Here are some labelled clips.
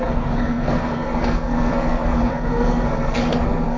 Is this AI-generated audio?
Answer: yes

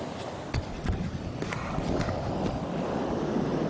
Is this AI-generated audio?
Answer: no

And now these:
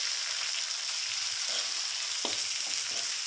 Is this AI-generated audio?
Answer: no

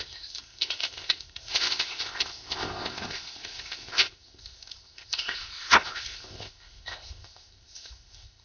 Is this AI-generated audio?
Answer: yes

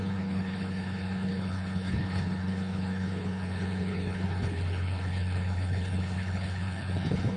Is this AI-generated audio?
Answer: yes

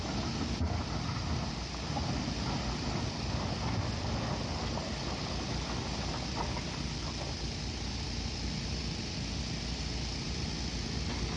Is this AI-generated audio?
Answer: no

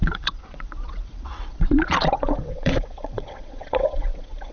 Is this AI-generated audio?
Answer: yes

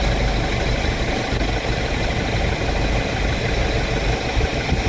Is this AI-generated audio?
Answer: no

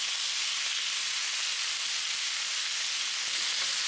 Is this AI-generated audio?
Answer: no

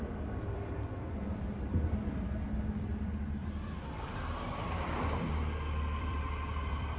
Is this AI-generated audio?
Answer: yes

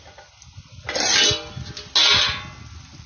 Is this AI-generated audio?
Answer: no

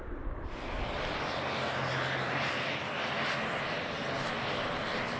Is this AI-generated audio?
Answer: no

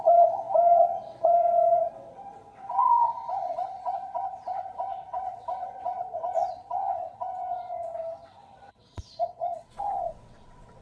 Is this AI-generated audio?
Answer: yes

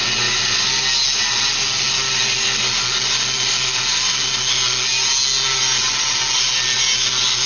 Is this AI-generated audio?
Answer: no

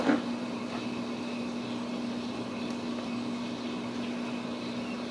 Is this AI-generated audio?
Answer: no